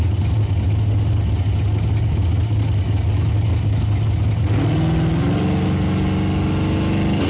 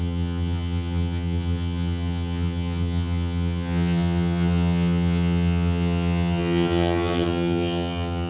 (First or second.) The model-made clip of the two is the second